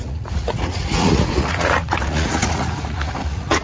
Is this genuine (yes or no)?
no